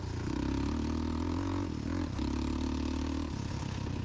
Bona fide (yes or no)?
yes